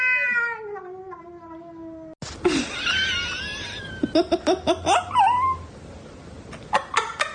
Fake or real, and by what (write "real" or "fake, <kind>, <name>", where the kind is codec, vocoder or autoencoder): real